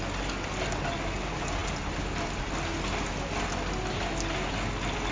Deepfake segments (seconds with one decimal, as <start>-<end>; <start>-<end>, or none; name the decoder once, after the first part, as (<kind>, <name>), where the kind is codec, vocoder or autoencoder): none